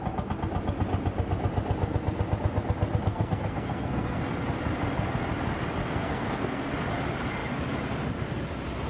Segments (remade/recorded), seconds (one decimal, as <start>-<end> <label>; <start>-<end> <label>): 0.0-3.1 recorded; 3.1-4.2 remade; 4.2-5.8 recorded; 5.8-6.6 remade; 6.6-8.9 recorded